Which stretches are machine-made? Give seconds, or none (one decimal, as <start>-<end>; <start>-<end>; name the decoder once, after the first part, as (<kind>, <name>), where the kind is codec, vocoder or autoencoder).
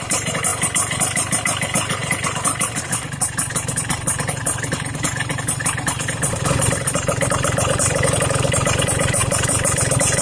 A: 0.0-10.2 (vocoder, BigVGAN v2)